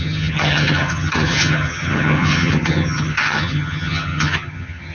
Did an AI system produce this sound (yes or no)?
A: yes